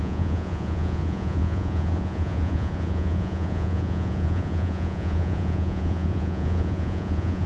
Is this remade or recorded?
remade